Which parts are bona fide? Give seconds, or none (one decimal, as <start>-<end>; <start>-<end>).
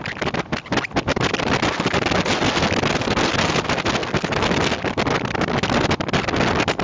0.0-6.8